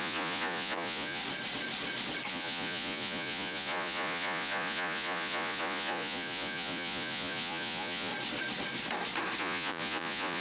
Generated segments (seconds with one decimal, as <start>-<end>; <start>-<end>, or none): 0.0-1.2; 2.3-8.1; 9.4-10.4